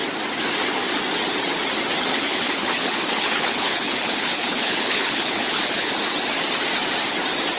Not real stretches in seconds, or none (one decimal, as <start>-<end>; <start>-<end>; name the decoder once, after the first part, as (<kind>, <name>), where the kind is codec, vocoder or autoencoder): 2.1-5.9 (codec, HILCodec)